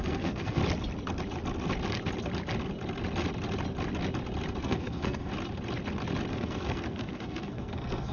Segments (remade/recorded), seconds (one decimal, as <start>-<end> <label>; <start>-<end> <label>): 0.0-0.6 remade; 0.6-4.6 recorded; 4.6-5.3 remade; 5.3-6.3 recorded; 6.3-8.1 remade